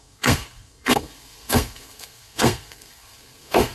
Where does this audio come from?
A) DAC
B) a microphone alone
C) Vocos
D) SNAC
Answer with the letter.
D